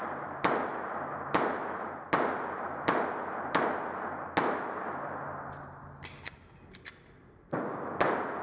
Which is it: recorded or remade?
recorded